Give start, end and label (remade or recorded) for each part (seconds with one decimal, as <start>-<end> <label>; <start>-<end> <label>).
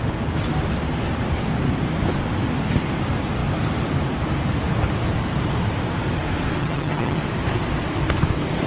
0.0-6.6 recorded; 6.6-7.2 remade; 7.2-8.7 recorded